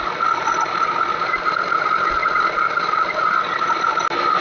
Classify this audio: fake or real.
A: real